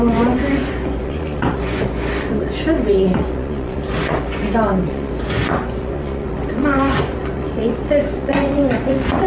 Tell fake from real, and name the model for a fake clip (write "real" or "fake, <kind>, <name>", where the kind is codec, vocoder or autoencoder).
fake, vocoder, Vocos